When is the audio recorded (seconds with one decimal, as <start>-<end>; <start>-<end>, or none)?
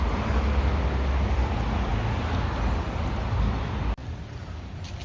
0.0-5.0